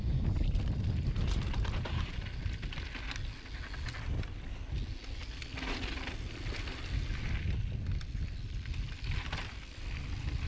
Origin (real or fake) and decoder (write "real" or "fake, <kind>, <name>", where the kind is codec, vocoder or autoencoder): real